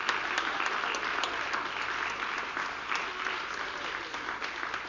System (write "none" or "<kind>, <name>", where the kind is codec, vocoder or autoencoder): none